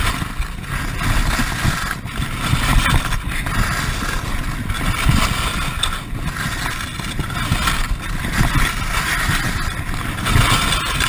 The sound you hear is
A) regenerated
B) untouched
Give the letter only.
B